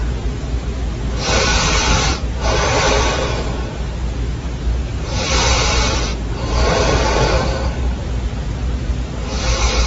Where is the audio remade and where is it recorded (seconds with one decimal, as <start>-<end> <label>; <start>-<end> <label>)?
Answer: 0.0-9.9 recorded